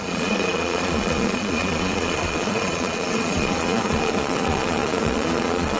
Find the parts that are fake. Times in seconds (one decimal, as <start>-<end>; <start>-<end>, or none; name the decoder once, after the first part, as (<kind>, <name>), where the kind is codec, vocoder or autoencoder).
0.0-5.8 (vocoder, Vocos)